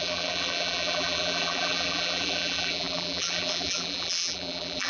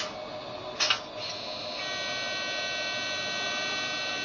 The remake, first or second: first